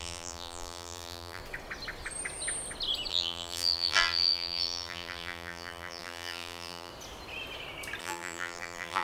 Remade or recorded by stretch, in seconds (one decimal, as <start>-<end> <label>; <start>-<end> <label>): 0.0-1.4 remade; 1.4-3.1 recorded; 3.1-6.9 remade; 6.9-8.0 recorded; 8.0-9.0 remade